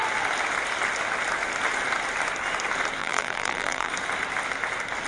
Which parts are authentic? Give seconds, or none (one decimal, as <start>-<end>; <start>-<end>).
0.0-3.0; 3.9-5.1